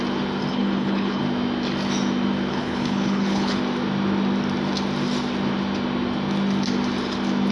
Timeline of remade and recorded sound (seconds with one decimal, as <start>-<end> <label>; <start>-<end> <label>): 0.0-0.5 recorded; 0.5-1.2 remade; 1.2-2.5 recorded; 2.5-3.6 remade; 3.6-7.5 recorded